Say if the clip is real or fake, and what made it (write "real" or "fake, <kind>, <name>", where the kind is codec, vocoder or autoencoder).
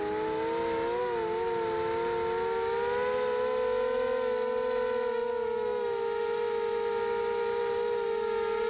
real